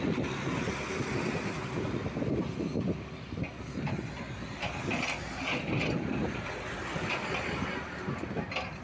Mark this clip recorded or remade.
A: recorded